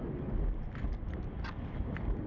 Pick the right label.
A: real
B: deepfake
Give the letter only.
A